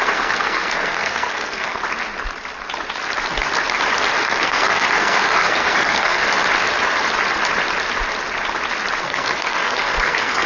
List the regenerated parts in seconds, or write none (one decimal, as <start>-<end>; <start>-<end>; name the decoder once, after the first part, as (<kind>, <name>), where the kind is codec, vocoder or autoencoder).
0.0-1.8 (codec, SNAC); 4.2-6.2; 9.0-10.5